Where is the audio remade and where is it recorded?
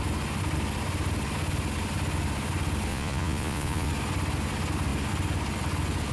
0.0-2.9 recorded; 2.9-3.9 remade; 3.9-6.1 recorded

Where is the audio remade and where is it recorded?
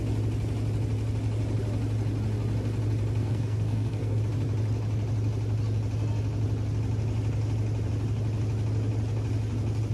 0.0-3.2 recorded; 3.2-4.2 remade; 4.2-9.9 recorded